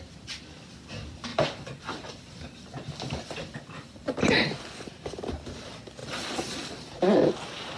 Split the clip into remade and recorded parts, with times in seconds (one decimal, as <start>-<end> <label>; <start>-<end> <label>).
0.0-1.3 recorded; 1.3-4.3 remade; 4.3-6.0 recorded; 6.0-6.9 remade; 6.9-7.8 recorded